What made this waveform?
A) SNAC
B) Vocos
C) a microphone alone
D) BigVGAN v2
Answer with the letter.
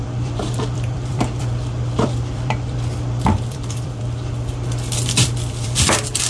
D